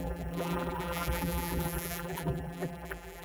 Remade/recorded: remade